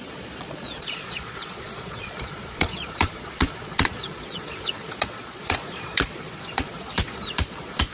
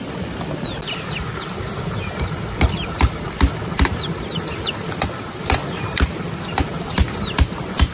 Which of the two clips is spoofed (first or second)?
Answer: first